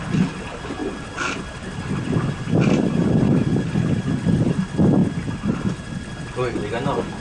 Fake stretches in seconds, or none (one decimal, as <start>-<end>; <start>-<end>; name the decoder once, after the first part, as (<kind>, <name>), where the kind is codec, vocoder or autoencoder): none